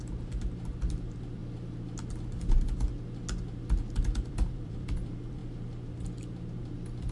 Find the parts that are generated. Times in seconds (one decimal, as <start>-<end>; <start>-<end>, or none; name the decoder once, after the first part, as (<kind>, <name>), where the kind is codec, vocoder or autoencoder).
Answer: 0.0-1.4 (vocoder, BigVGAN v2); 4.0-5.4; 6.6-7.1